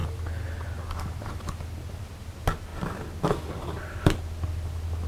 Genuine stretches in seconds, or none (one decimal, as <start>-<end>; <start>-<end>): 0.0-5.1

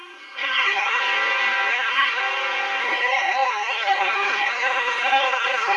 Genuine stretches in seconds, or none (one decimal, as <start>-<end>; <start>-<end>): 1.0-1.7; 2.2-2.8

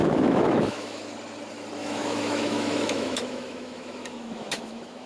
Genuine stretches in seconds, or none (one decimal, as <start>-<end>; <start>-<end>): 1.0-1.8

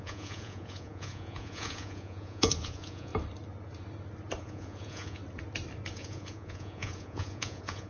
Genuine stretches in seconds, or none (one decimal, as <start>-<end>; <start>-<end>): 3.1-4.4; 5.2-5.9

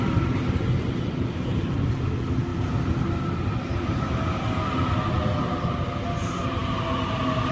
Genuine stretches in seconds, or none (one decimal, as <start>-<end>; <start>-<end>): 0.0-7.5

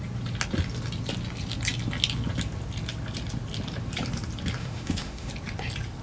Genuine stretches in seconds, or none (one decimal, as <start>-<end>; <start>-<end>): 0.0-4.6; 5.3-6.0

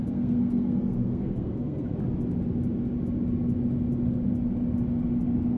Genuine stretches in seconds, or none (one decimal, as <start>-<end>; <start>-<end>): 2.0-5.6